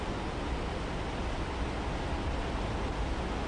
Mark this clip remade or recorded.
recorded